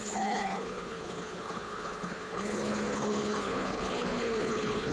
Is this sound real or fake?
fake